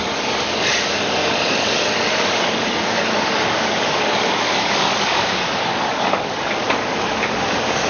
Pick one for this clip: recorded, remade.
remade